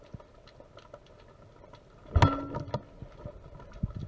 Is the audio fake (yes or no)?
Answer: no